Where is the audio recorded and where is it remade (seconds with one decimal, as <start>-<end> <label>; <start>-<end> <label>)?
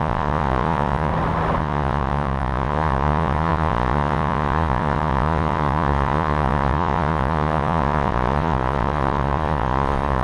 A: 0.0-1.1 remade; 1.1-1.6 recorded; 1.6-10.2 remade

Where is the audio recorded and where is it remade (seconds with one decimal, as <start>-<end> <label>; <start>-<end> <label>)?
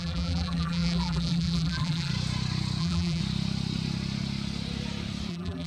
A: 0.0-2.1 remade; 2.1-2.8 recorded; 2.8-3.2 remade; 3.2-5.3 recorded; 5.3-5.7 remade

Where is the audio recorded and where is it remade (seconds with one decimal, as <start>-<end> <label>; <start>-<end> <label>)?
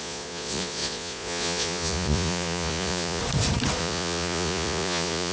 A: 0.0-3.2 remade; 3.2-3.8 recorded; 3.8-5.3 remade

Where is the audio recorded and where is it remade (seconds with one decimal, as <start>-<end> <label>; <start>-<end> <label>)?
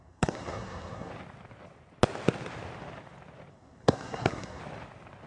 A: 0.0-1.1 remade; 1.1-3.5 recorded; 3.5-4.6 remade; 4.6-5.3 recorded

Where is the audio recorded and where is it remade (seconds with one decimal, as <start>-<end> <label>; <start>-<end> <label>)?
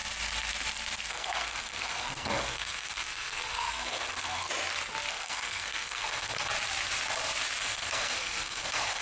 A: 0.0-1.1 recorded; 1.1-4.5 remade; 4.5-5.1 recorded; 5.1-6.5 remade; 6.5-7.6 recorded; 7.6-9.0 remade